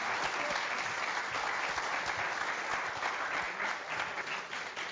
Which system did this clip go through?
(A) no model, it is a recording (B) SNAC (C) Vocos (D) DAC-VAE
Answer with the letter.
A